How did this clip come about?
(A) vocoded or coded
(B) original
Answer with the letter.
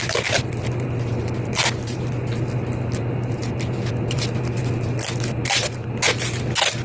B